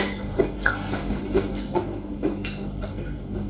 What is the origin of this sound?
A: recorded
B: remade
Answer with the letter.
B